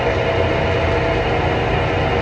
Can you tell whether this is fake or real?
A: real